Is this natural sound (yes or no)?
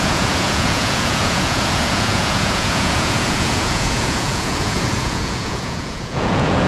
no